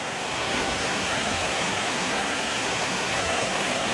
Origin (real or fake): fake